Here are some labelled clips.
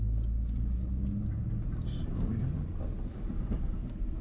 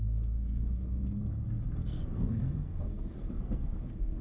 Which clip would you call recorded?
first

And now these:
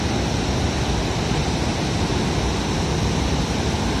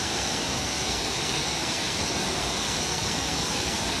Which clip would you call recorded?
first